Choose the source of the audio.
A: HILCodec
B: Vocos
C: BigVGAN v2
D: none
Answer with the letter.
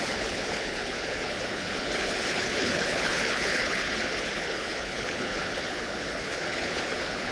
A